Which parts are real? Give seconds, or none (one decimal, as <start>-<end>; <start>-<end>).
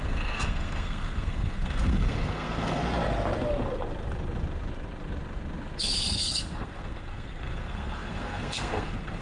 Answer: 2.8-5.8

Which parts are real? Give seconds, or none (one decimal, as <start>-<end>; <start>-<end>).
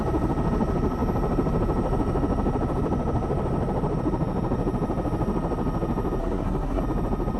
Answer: 0.0-6.2; 6.8-7.4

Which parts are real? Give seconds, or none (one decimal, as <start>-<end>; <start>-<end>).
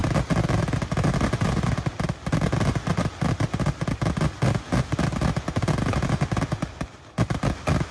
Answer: 0.0-7.9